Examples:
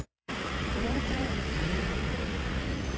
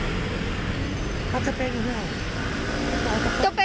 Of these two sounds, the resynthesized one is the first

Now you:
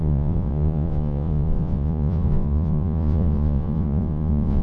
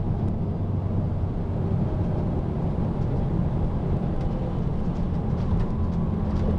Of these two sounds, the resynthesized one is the first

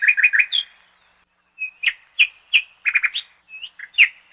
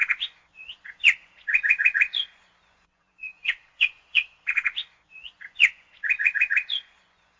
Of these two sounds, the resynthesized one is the second